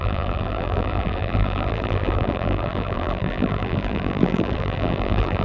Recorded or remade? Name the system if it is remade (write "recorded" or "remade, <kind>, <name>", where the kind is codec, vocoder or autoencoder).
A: remade, vocoder, BigVGAN v2